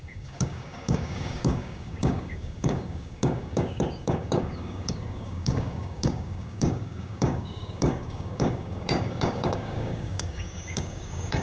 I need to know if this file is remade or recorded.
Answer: remade